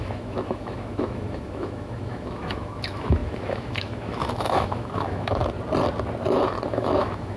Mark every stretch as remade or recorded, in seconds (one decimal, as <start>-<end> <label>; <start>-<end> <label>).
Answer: 0.0-5.4 remade; 5.4-6.7 recorded; 6.7-7.4 remade